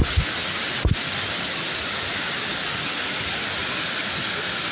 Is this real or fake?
real